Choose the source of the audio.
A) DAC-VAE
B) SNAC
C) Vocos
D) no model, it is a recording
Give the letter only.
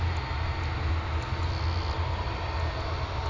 D